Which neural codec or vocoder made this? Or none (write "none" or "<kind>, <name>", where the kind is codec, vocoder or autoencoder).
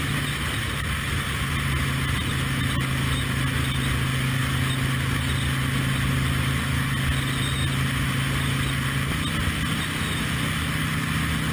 none